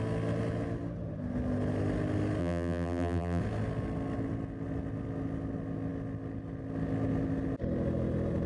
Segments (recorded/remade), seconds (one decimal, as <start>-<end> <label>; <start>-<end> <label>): 0.0-2.4 recorded; 2.4-3.4 remade; 3.4-8.5 recorded